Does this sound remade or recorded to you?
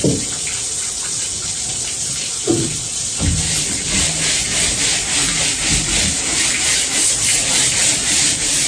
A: remade